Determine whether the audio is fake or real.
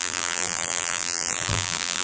fake